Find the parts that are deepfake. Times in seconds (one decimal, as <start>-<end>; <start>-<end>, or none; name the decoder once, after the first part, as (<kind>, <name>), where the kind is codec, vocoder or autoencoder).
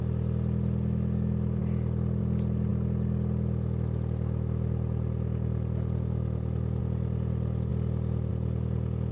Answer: none